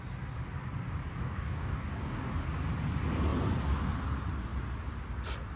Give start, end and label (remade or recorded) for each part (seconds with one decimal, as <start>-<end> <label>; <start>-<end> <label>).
0.0-1.2 recorded; 1.2-2.3 remade; 2.3-5.6 recorded

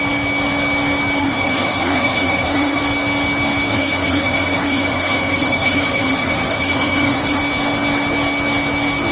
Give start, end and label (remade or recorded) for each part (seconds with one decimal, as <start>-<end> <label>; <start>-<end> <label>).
0.0-1.2 recorded; 1.2-2.8 remade; 2.8-3.7 recorded; 3.7-7.4 remade; 7.4-9.1 recorded

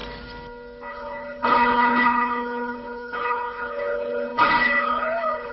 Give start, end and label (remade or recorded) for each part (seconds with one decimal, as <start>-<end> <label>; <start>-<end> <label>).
0.0-0.9 recorded; 0.9-5.5 remade

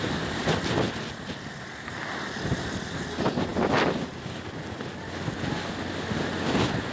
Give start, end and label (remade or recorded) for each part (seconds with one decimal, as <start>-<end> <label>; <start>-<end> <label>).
0.0-6.9 recorded

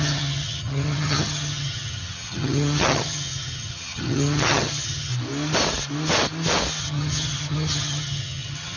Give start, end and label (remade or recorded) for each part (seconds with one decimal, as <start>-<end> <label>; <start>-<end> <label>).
0.0-5.1 remade; 5.1-6.8 recorded; 6.8-8.8 remade

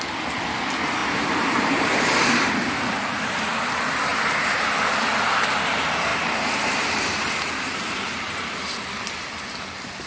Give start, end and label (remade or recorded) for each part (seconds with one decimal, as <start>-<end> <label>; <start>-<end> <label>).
0.0-1.0 recorded; 1.0-3.4 remade; 3.4-4.1 recorded; 4.1-4.7 remade; 4.7-6.1 recorded; 6.1-8.4 remade; 8.4-10.1 recorded

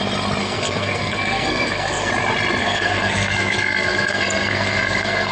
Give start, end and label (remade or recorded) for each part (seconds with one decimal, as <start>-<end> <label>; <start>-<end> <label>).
0.0-0.4 recorded; 0.4-2.1 remade; 2.1-2.6 recorded; 2.6-5.3 remade